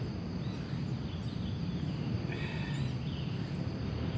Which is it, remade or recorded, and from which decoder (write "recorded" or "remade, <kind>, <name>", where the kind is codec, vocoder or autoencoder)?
recorded